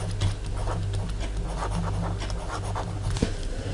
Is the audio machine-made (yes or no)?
no